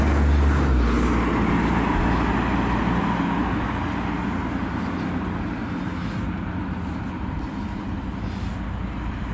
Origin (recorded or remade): recorded